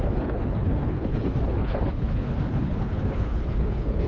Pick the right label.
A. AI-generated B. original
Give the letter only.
A